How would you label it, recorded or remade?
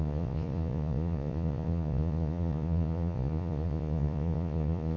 remade